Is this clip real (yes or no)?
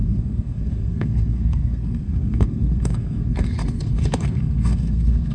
no